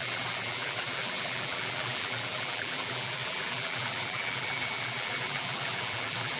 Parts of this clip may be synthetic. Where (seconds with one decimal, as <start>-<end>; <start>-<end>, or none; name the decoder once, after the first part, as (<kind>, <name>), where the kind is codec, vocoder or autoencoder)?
0.0-6.4 (vocoder, BigVGAN v2)